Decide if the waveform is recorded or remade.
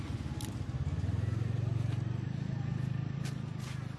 recorded